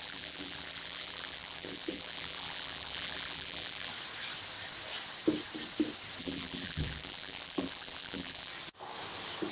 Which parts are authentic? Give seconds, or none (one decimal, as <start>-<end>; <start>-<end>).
3.9-6.2; 8.5-9.5